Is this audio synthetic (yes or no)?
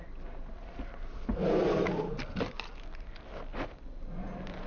no